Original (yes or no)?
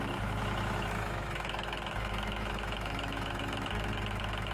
no